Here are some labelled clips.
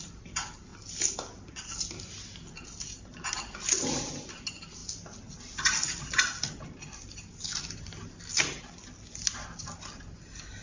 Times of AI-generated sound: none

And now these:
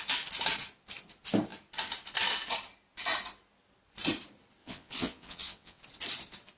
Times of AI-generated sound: 4.6-5.8